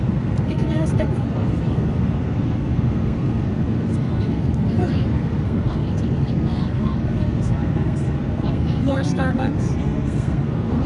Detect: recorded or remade remade